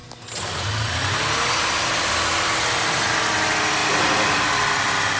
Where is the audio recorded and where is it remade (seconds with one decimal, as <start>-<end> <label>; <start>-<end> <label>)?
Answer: 0.0-5.2 recorded